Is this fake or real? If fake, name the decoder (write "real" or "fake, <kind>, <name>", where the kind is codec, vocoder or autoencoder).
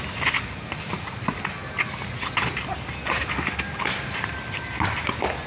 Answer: real